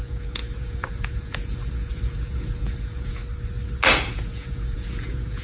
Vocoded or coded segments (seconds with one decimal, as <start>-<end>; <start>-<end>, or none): 0.0-3.2; 4.0-5.4